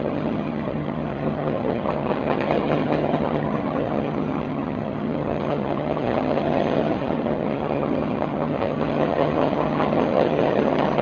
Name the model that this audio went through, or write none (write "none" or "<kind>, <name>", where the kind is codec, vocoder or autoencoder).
vocoder, HiFi-GAN